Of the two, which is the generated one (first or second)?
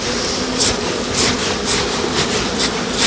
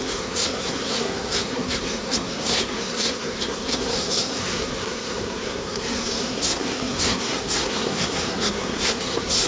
second